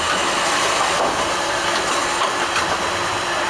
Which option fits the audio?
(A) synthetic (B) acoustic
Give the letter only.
A